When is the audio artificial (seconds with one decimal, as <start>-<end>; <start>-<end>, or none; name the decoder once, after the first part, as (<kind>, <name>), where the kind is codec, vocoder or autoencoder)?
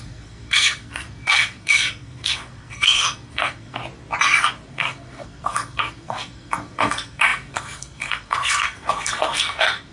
0.0-3.8 (codec, SNAC); 4.7-9.9